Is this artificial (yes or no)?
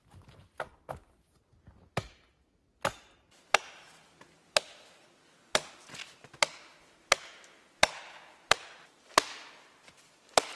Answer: no